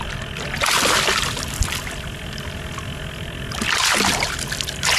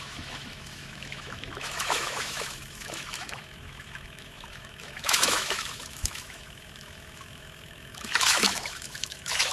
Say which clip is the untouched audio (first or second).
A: first